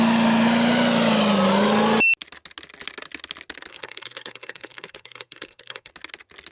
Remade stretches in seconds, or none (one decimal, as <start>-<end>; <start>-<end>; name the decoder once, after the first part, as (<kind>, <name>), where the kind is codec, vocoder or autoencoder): 3.7-5.9 (codec, SNAC)